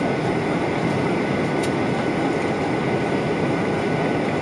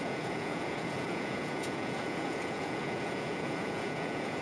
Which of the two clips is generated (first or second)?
second